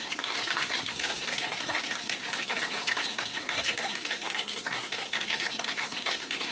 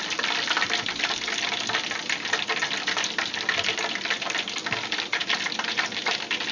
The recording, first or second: second